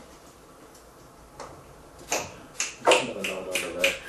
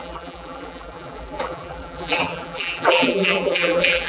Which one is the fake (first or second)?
second